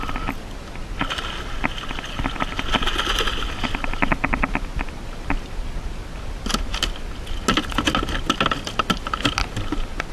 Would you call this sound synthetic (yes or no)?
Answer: no